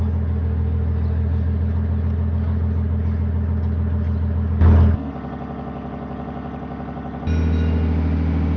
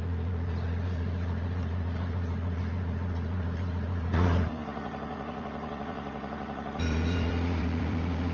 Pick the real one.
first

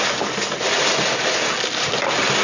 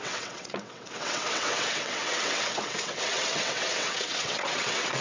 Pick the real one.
first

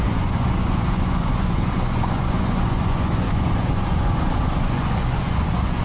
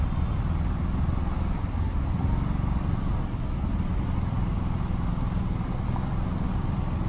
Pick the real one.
second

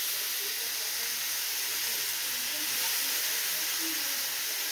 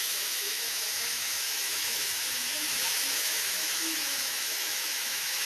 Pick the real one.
first